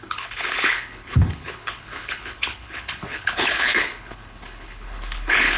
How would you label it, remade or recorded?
remade